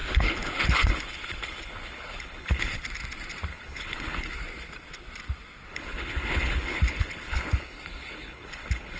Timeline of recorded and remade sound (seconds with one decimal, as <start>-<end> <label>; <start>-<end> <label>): 0.0-2.8 remade; 2.8-3.5 recorded; 3.5-4.3 remade; 4.3-5.7 recorded; 5.7-9.0 remade